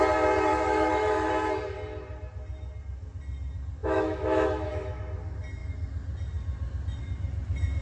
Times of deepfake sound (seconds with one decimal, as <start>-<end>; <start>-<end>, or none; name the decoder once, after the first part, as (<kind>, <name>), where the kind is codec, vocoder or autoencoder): 0.5-1.3 (autoencoder, DAC-VAE); 3.8-5.0